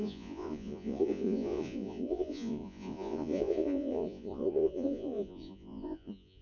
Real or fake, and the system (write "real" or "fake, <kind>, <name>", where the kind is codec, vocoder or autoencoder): fake, vocoder, Vocos